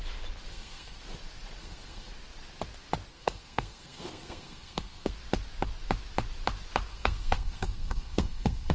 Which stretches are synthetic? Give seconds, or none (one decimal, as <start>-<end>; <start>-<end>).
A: 0.5-1.0; 1.6-2.1; 3.1-5.1; 6.9-8.7